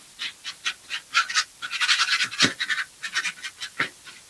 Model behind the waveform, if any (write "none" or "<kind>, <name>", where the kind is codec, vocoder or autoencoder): none